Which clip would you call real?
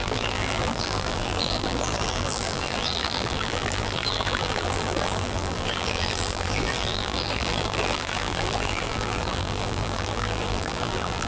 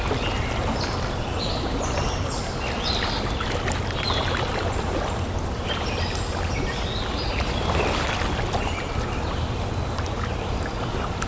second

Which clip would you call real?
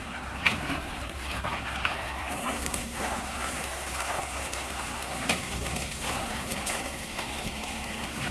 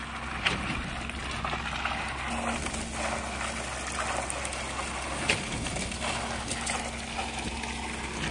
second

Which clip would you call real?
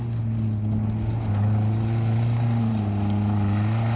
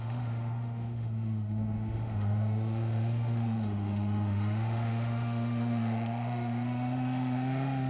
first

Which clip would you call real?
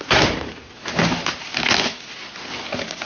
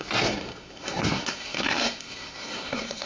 first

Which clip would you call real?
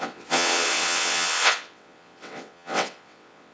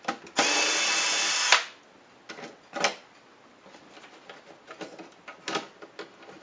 second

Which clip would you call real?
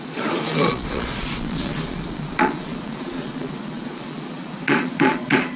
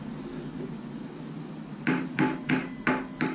second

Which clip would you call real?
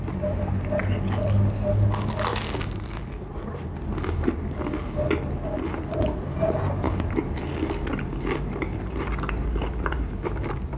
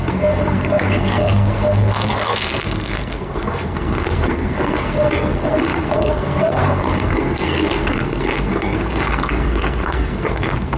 first